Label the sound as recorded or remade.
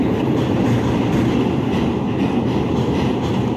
recorded